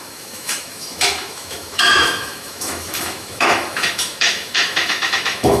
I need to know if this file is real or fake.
fake